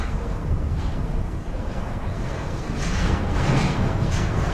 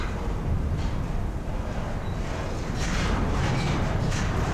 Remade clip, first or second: first